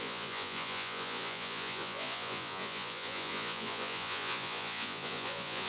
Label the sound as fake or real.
fake